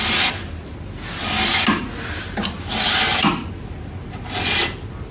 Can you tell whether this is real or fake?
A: real